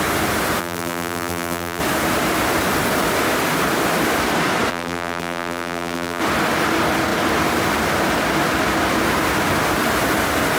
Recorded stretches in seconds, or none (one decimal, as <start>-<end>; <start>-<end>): 0.0-0.6; 1.8-4.7; 6.2-10.6